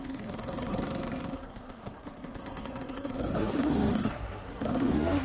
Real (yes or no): no